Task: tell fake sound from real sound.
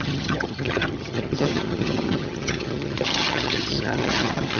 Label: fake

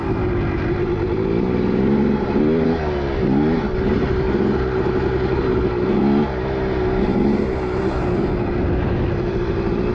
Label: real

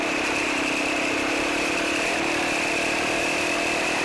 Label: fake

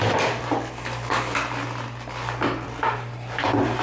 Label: real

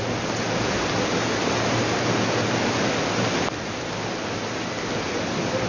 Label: real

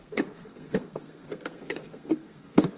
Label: fake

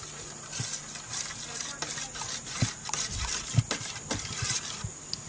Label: real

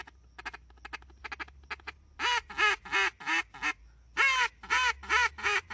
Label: real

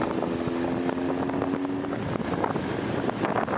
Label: real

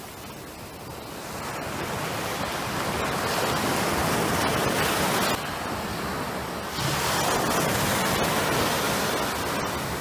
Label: real